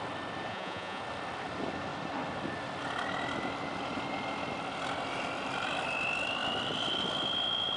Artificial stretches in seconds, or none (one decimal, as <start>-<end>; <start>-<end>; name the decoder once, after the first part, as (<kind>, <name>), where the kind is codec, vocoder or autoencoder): 0.5-1.0 (vocoder, Vocos)

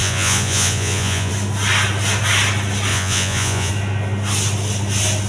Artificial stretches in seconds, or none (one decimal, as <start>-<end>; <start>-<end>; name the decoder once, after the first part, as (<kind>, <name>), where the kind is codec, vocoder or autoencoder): 0.0-1.3 (vocoder, Vocos); 2.9-3.7

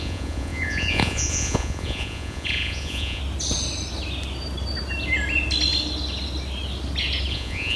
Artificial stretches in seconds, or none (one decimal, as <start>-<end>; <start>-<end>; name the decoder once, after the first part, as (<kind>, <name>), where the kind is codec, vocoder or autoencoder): 0.0-3.2 (vocoder, Vocos); 7.3-7.8

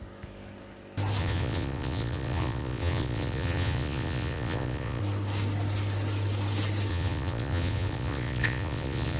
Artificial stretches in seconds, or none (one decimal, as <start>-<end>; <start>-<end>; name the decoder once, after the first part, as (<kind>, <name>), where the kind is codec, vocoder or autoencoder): 1.2-5.0 (vocoder, Vocos); 6.9-9.2

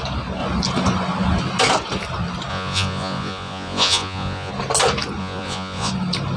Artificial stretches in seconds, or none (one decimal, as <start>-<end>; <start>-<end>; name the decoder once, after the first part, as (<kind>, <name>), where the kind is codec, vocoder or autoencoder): 2.5-4.5 (vocoder, Vocos); 5.2-5.9